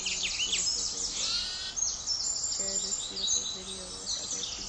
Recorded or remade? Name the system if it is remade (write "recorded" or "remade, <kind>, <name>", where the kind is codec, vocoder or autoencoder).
recorded